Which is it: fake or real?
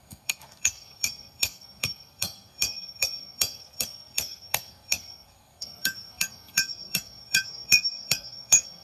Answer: fake